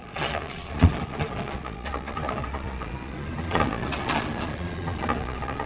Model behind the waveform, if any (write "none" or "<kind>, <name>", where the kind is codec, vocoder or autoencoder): vocoder, Vocos